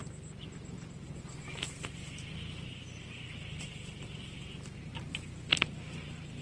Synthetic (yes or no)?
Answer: no